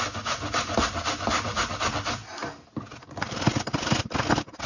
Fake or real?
real